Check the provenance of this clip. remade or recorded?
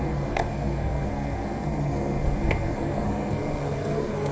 remade